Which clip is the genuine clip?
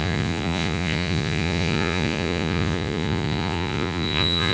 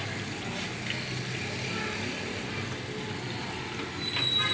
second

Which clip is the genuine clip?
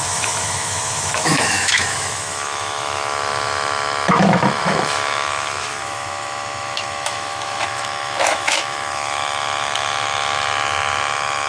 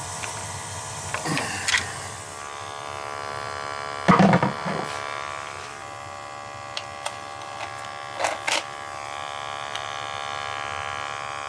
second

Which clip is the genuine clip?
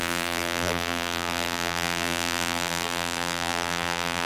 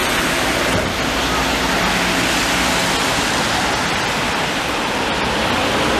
second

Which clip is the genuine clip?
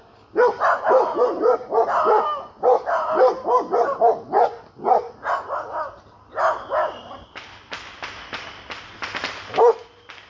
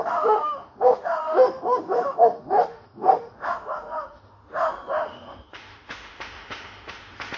first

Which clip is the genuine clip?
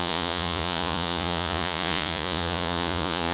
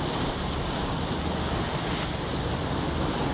second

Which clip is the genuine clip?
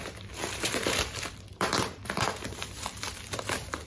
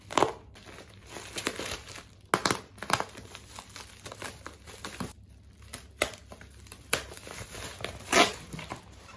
second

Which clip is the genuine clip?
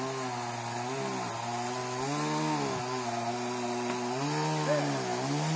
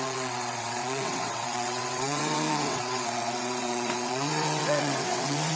first